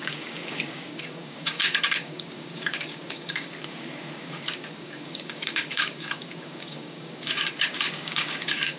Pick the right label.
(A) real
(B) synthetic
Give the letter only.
B